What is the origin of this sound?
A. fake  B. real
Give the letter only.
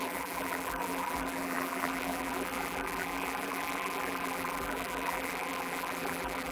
A